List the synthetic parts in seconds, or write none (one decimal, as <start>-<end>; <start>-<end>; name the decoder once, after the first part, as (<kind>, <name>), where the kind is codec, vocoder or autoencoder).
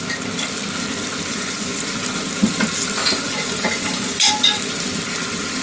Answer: 1.3-1.8 (vocoder, Vocos); 3.2-4.3